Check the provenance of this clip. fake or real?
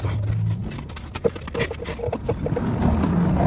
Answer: real